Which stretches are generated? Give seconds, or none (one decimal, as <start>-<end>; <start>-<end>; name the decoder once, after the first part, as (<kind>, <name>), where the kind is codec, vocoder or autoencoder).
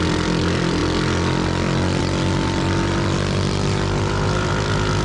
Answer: 0.0-0.8 (vocoder, BigVGAN v2); 2.0-5.0